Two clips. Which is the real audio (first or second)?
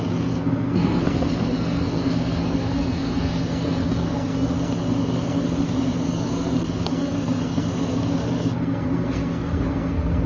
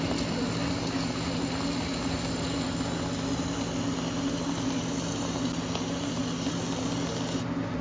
second